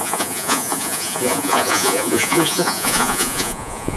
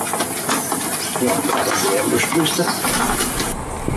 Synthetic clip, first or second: first